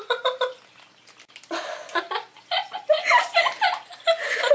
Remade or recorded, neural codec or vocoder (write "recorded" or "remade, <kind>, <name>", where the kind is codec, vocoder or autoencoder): recorded